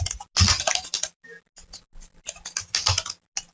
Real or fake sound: real